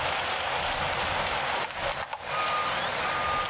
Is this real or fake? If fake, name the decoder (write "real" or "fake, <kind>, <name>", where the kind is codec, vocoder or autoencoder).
real